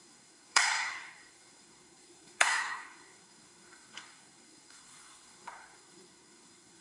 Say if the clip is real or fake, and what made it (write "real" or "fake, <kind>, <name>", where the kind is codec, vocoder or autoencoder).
fake, codec, SNAC